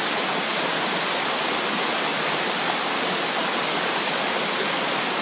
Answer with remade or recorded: recorded